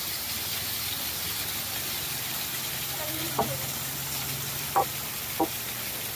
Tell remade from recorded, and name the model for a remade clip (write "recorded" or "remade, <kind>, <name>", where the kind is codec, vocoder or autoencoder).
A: recorded